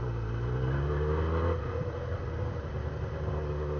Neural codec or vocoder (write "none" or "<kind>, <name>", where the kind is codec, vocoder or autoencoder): none